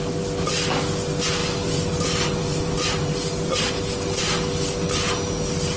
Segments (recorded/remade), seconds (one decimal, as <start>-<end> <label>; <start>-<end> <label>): 0.0-5.8 recorded